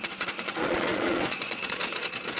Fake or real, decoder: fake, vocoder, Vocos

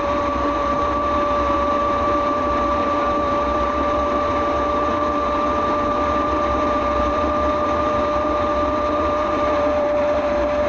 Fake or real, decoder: fake, vocoder, BigVGAN v2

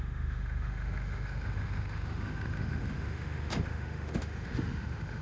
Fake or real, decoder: fake, autoencoder, DAC-VAE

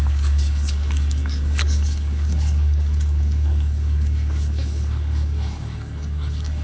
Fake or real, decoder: fake, codec, DAC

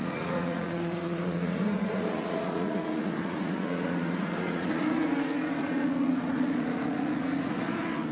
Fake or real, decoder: fake, vocoder, Vocos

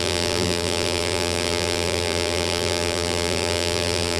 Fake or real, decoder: fake, vocoder, BigVGAN v2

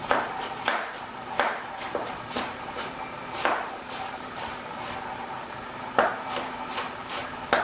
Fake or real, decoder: fake, vocoder, BigVGAN v2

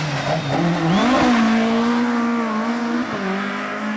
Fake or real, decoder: real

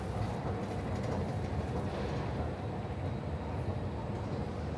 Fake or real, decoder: real